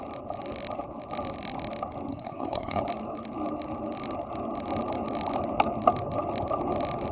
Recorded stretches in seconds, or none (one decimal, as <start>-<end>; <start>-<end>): 0.0-2.1; 2.8-7.1